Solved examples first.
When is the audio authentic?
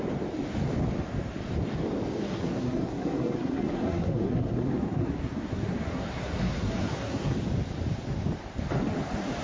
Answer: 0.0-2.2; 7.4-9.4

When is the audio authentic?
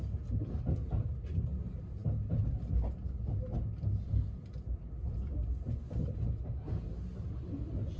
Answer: 0.0-8.0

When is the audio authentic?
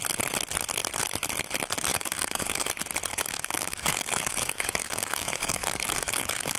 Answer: 0.0-1.9; 2.7-3.1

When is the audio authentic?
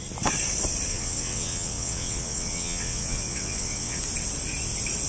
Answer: 0.0-0.9; 4.0-5.1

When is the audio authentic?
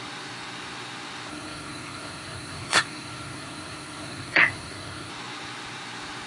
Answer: 0.0-1.3; 5.1-6.3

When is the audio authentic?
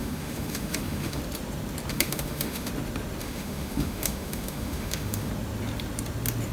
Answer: 1.2-1.9; 2.7-3.2; 5.3-6.5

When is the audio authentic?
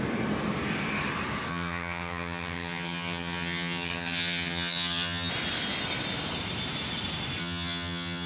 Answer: 0.0-1.5; 5.3-7.4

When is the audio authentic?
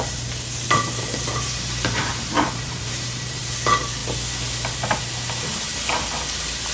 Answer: 0.0-1.3; 3.4-6.7